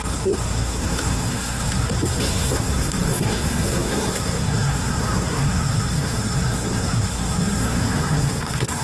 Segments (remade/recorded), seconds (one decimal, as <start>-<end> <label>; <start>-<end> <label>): 0.0-8.8 remade